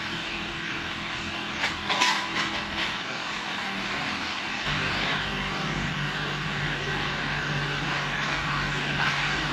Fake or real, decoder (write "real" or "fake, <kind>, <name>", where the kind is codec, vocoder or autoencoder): fake, codec, DAC